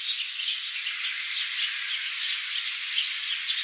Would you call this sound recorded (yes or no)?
yes